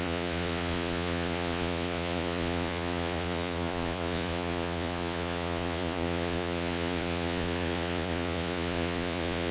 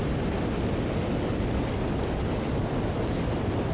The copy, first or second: first